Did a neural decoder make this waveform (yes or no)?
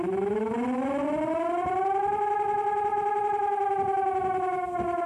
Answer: no